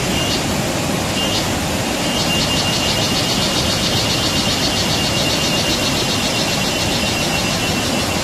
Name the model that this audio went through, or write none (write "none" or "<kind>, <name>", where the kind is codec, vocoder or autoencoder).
none